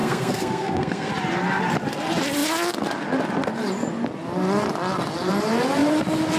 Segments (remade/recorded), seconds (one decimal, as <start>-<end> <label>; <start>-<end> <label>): 0.0-1.1 remade; 1.1-6.4 recorded